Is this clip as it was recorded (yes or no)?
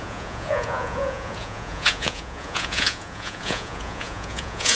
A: no